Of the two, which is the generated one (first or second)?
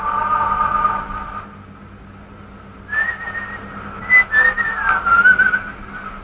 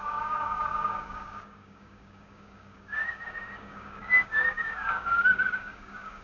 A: second